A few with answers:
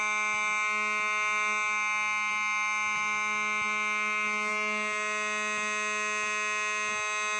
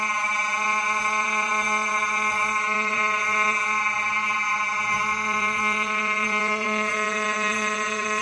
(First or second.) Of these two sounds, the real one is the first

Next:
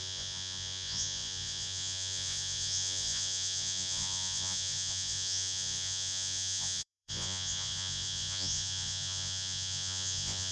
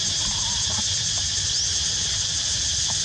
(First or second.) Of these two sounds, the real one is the second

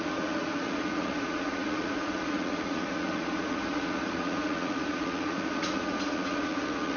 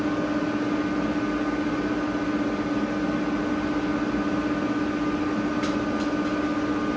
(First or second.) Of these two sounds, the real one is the second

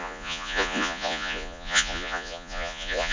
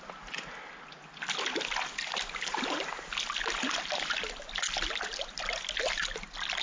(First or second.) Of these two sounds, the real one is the second